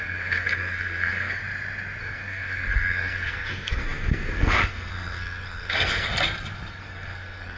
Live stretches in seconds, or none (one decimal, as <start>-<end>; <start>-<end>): 1.4-2.0; 6.1-6.7